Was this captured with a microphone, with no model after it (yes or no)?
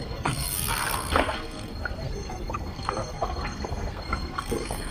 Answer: no